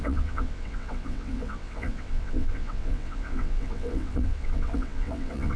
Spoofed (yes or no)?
yes